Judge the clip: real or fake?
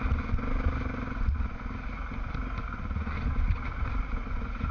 fake